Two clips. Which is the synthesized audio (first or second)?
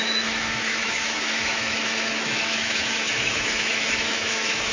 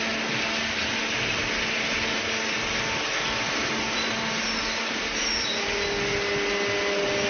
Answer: first